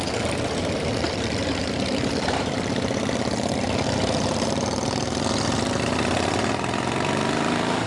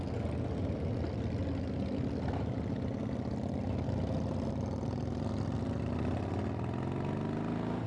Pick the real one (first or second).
second